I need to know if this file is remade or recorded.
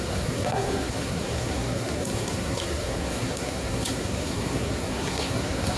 remade